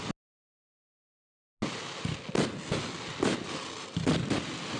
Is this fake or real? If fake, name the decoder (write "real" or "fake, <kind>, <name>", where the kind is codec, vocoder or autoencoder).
real